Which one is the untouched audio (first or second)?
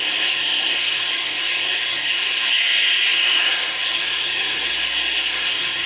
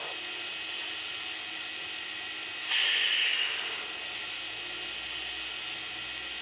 second